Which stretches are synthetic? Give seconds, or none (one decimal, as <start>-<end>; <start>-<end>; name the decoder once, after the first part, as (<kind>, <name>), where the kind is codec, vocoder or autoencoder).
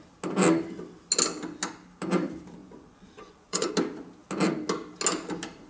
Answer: 2.6-3.7 (vocoder, Vocos)